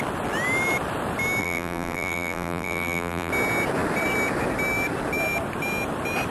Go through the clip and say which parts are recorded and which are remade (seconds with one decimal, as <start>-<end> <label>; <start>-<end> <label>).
0.0-1.4 recorded; 1.4-3.3 remade; 3.3-6.3 recorded